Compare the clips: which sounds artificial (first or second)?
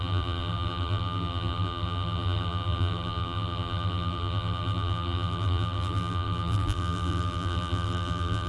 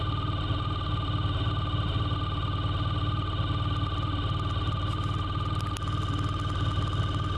first